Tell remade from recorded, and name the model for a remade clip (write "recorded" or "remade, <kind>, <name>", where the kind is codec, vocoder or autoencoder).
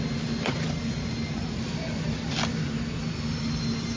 recorded